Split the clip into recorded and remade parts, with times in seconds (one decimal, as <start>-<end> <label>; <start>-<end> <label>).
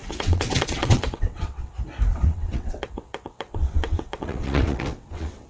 0.0-1.7 remade; 1.7-2.1 recorded; 2.1-5.5 remade